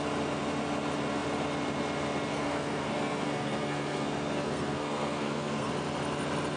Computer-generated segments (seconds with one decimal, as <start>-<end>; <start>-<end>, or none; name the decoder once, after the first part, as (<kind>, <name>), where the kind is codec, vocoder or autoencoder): 2.3-5.7 (codec, SNAC)